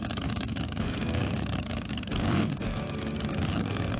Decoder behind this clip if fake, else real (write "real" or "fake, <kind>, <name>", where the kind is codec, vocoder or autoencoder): fake, codec, DAC